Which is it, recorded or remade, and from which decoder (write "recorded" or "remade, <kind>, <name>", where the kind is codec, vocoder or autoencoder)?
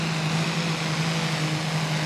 recorded